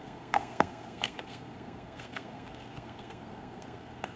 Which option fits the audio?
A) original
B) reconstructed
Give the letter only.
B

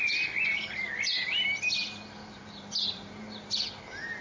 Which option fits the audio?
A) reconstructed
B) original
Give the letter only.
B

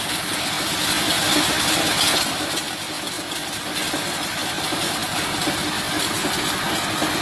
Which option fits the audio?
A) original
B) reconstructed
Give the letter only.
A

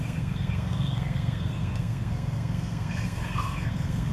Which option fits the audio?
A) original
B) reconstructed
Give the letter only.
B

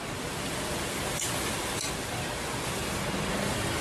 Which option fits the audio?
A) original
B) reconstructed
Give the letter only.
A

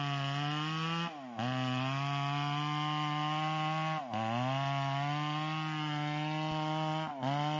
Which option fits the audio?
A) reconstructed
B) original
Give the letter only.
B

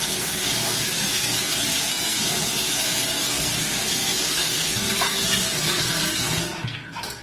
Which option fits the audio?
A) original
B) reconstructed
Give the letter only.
B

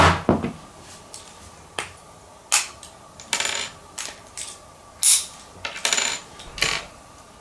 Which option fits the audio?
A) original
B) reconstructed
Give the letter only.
A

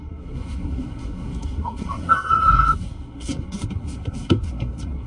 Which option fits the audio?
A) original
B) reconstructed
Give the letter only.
B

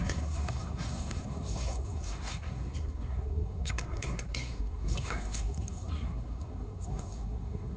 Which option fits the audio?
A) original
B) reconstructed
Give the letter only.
B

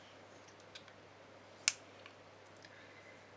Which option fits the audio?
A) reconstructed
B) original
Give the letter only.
B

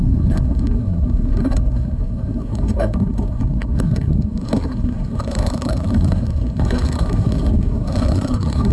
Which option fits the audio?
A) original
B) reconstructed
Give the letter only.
B